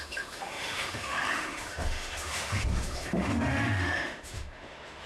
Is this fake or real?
fake